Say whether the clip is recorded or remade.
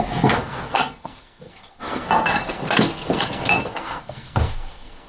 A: remade